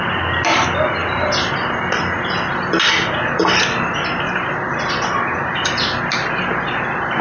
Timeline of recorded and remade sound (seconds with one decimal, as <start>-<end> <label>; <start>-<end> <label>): 0.0-7.2 recorded